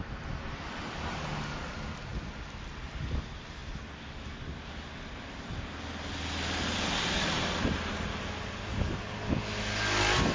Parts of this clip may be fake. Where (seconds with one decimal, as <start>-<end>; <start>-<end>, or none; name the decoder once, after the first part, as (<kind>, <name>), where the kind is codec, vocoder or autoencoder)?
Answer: none